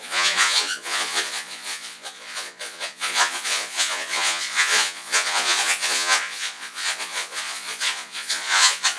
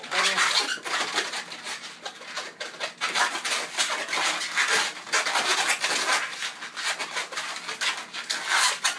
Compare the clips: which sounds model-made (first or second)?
first